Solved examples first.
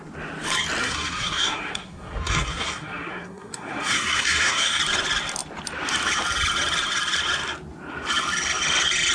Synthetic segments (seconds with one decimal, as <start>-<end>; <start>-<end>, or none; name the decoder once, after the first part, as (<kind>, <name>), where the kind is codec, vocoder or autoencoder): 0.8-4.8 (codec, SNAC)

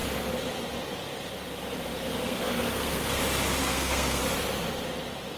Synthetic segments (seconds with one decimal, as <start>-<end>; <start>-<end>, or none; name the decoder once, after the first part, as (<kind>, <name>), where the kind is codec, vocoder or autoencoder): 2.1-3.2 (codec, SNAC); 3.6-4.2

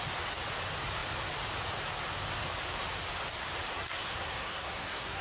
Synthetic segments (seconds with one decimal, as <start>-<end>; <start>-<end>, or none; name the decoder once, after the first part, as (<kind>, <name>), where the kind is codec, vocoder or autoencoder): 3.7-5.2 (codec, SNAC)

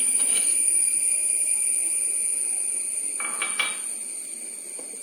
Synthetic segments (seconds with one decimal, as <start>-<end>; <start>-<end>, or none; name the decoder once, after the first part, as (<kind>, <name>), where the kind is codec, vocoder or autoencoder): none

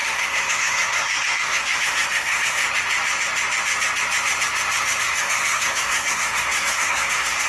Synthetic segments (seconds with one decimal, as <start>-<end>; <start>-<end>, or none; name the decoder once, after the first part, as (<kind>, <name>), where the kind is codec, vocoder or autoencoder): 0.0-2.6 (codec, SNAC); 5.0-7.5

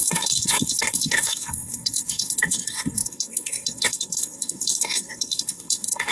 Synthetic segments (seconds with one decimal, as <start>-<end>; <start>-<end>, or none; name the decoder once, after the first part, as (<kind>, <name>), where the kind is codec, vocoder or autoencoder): 0.0-6.1 (codec, SNAC)